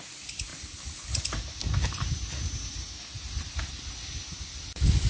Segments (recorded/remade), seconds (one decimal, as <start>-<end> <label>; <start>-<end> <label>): 0.0-5.1 recorded